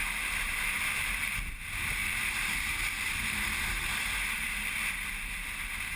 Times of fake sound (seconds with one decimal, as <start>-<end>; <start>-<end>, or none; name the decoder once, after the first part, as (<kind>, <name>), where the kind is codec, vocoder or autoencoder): 0.0-0.6 (vocoder, BigVGAN v2); 2.0-5.6